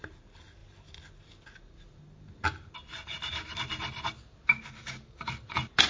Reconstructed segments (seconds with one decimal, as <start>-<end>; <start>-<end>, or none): none